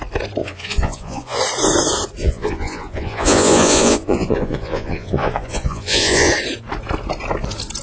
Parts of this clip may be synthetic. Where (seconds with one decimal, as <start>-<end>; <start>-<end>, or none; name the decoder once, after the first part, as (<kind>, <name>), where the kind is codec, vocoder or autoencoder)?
0.4-1.4 (vocoder, Vocos); 2.2-6.3